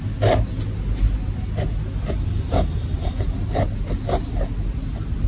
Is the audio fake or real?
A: real